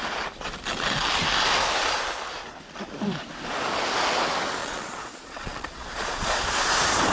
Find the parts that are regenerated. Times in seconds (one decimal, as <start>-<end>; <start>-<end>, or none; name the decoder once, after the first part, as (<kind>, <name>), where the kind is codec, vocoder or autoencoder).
4.6-6.4 (vocoder, Vocos)